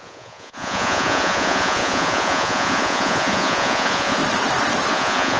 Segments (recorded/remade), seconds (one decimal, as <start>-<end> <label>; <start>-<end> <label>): 0.0-4.2 remade; 4.2-4.9 recorded; 4.9-5.4 remade